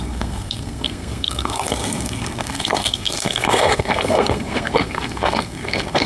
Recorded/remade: remade